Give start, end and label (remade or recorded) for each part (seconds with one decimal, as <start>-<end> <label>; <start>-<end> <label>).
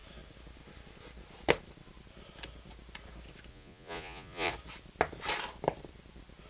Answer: 0.0-3.5 recorded; 3.5-4.5 remade; 4.5-6.5 recorded